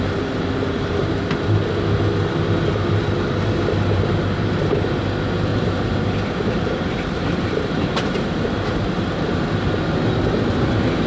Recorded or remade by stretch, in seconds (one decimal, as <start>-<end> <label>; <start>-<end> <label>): 0.0-1.0 recorded; 1.0-1.6 remade; 1.6-5.5 recorded; 5.5-9.4 remade; 9.4-11.1 recorded